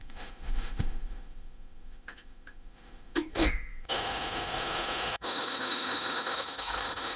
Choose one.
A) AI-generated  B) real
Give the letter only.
A